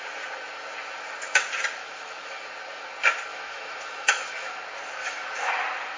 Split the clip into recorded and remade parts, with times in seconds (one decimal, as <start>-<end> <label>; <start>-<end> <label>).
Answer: 0.0-1.8 recorded; 1.8-2.4 remade; 2.4-3.3 recorded; 3.3-4.6 remade; 4.6-5.0 recorded; 5.0-5.5 remade; 5.5-6.0 recorded